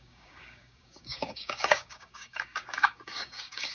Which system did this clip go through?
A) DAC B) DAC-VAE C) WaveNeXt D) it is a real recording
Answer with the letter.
A